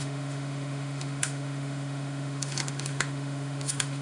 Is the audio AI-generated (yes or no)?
yes